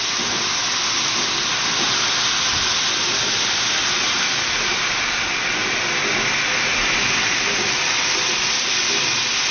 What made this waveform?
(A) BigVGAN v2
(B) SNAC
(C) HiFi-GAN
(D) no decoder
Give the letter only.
D